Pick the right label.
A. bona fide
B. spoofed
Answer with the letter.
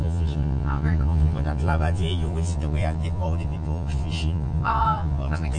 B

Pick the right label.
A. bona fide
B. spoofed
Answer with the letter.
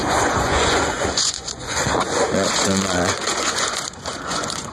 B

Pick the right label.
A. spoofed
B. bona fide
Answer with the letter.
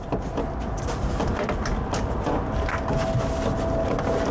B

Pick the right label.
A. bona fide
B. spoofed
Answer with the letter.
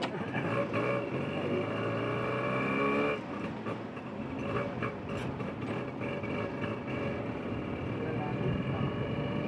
A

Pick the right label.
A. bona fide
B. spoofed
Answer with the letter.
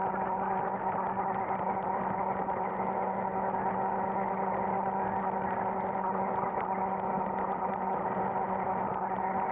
A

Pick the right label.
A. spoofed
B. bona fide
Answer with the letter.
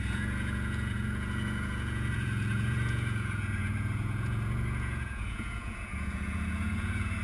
A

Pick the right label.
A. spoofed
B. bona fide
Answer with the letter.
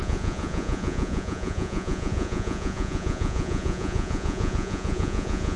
A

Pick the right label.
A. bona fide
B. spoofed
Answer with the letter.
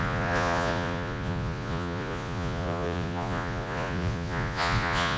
B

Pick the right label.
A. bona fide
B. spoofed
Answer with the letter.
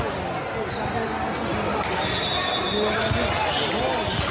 A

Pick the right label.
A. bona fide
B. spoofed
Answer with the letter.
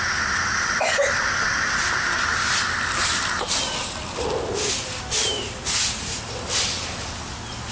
A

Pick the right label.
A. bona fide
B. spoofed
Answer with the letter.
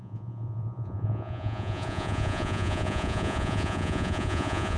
B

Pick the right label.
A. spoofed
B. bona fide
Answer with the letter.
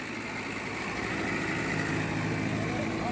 B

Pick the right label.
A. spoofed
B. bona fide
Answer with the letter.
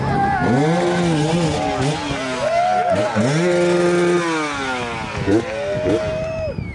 B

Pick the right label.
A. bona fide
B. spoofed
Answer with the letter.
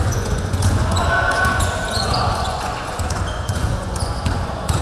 B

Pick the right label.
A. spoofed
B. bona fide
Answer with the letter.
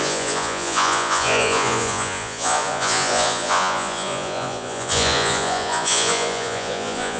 A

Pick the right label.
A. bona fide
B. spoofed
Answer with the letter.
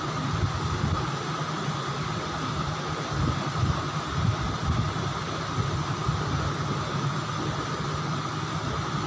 A